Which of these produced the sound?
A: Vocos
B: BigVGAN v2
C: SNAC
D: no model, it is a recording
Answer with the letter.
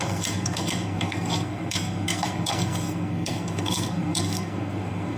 C